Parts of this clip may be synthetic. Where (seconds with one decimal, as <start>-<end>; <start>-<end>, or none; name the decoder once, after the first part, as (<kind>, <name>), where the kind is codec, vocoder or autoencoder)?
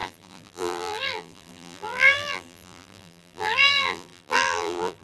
0.0-5.0 (vocoder, BigVGAN v2)